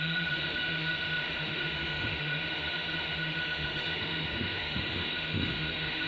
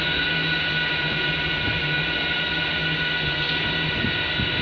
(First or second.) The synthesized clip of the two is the first